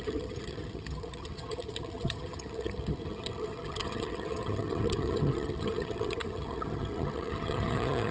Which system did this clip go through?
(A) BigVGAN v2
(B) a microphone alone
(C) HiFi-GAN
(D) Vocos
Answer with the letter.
C